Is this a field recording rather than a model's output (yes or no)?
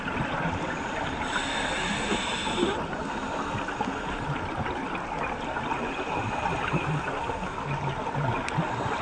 yes